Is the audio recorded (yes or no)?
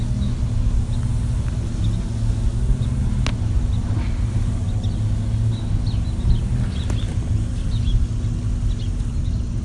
yes